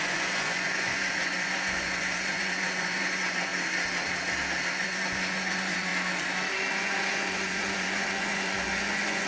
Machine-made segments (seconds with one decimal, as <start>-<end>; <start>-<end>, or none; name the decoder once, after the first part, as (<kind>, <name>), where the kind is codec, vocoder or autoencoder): 0.0-3.5 (vocoder, Vocos); 4.8-5.9; 6.7-9.3